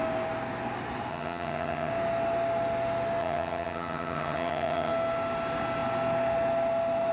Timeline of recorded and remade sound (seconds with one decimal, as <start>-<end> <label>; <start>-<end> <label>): 0.0-1.1 recorded; 1.1-1.9 remade; 1.9-3.2 recorded; 3.2-4.9 remade; 4.9-7.1 recorded